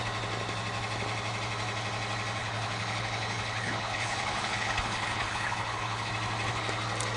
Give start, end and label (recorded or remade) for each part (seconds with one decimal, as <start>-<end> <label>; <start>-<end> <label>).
0.0-2.4 recorded; 2.4-6.1 remade; 6.1-7.2 recorded